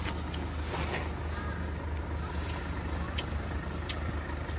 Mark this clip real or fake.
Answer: real